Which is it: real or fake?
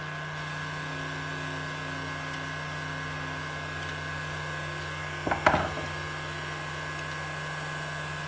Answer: real